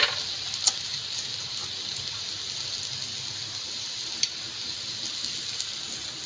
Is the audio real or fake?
real